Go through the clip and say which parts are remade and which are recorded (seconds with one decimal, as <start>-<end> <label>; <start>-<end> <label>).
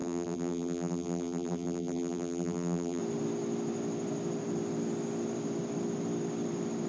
0.0-3.0 remade; 3.0-6.9 recorded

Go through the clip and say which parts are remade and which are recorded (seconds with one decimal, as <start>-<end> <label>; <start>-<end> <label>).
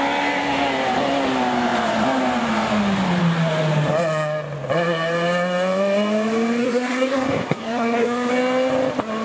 0.0-6.6 recorded; 6.6-8.3 remade; 8.3-9.2 recorded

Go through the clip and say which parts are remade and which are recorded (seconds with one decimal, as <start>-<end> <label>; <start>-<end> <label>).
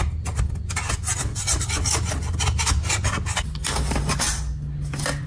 0.0-3.6 recorded; 3.6-4.4 remade; 4.4-5.3 recorded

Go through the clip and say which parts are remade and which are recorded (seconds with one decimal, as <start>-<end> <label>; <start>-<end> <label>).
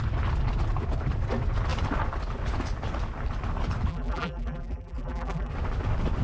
0.0-3.9 recorded; 3.9-5.5 remade; 5.5-6.2 recorded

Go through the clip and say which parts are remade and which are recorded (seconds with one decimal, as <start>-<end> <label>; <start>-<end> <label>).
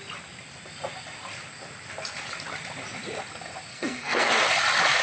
0.0-3.7 recorded; 3.7-4.3 remade; 4.3-5.0 recorded